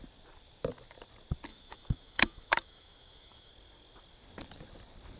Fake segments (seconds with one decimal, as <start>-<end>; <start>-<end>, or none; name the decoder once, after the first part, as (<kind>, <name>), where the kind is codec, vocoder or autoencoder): 1.5-3.5 (autoencoder, DAC-VAE)